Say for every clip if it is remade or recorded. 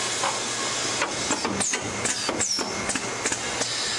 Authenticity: recorded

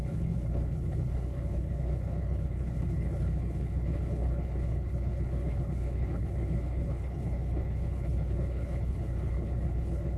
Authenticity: remade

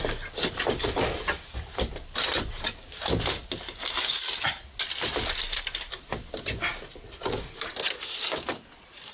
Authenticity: recorded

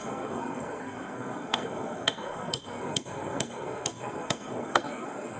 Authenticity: remade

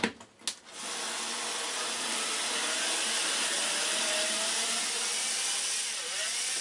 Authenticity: recorded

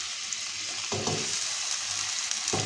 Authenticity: recorded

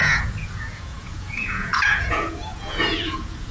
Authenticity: remade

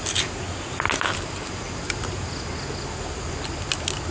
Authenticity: recorded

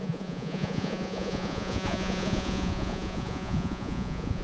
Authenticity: remade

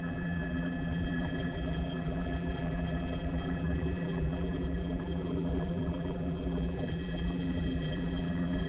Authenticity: remade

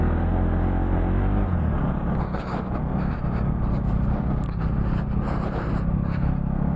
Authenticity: recorded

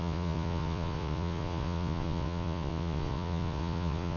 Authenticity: remade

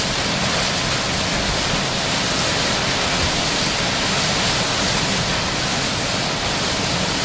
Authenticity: recorded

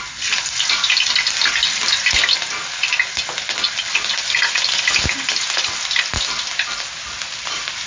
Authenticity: recorded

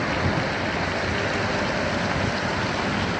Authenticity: recorded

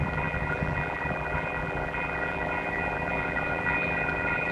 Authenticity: remade